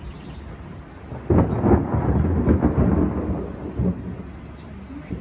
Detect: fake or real real